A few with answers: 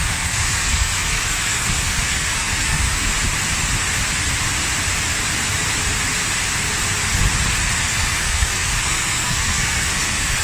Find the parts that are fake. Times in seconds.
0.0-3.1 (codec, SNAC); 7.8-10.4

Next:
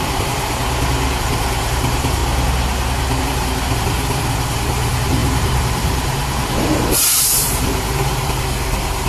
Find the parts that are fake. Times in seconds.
0.0-0.6 (vocoder, BigVGAN v2); 1.2-2.2; 3.2-9.1

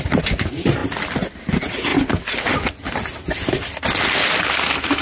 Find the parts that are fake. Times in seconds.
none

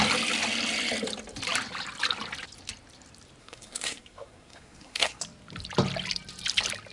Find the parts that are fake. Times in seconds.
3.4-5.2 (codec, SNAC)

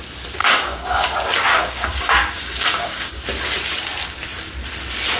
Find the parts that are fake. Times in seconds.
0.4-1.1 (codec, DAC); 1.5-3.2

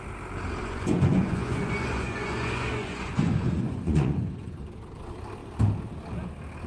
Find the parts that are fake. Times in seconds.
0.6-4.6 (vocoder, Vocos)

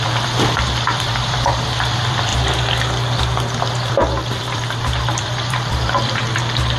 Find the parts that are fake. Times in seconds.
0.0-2.3 (vocoder, BigVGAN v2); 3.9-6.8